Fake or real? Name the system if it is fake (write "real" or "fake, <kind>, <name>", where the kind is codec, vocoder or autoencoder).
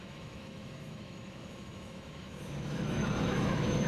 fake, autoencoder, DAC-VAE